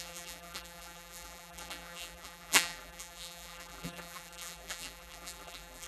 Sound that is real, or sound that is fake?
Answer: fake